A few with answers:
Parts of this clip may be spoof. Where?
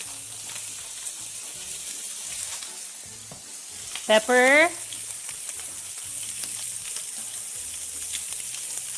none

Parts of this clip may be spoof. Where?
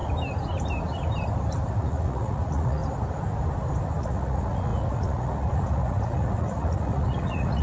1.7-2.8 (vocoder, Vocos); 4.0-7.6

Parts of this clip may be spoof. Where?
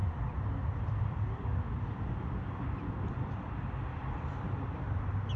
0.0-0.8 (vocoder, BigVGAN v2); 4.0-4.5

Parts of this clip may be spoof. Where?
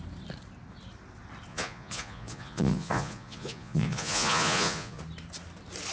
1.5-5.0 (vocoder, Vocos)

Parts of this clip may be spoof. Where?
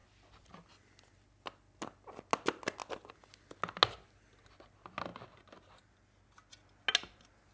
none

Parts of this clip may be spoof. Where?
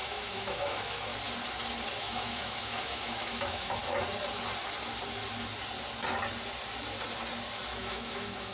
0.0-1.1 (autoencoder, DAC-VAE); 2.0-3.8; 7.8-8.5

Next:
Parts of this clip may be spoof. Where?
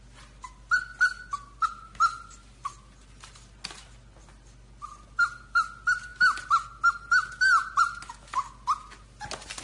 none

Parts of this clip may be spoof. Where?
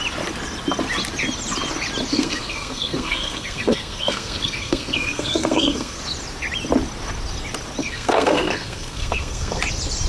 2.1-6.0 (codec, SNAC); 7.8-9.6